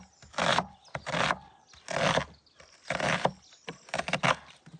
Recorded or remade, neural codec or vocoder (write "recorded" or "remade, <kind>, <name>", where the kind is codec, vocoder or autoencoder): recorded